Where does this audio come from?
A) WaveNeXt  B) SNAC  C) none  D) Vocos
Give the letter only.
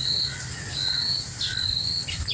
C